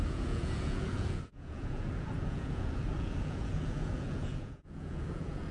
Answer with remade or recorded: remade